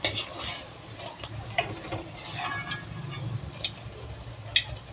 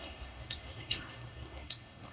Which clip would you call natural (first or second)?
first